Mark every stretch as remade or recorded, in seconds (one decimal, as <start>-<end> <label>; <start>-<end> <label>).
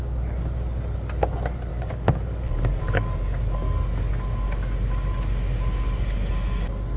0.0-1.7 recorded; 1.7-4.1 remade; 4.1-7.0 recorded